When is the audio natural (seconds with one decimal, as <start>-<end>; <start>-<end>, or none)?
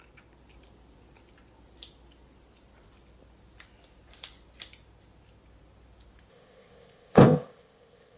0.0-6.3